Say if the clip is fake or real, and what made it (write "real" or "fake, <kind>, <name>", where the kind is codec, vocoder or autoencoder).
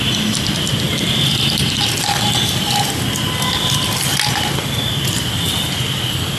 real